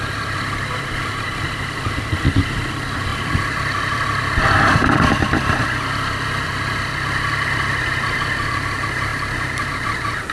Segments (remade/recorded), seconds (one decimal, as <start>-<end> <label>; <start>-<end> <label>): 0.0-10.3 remade